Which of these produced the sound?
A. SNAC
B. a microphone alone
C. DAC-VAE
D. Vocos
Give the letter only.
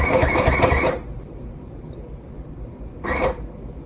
B